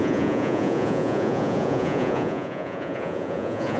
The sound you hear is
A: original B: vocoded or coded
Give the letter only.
B